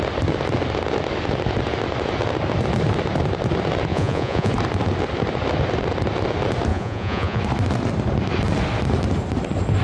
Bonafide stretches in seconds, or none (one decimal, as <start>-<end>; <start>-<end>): 0.0-3.9; 4.5-6.7; 7.4-9.8